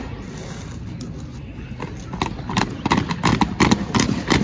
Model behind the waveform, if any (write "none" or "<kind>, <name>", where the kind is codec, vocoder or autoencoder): none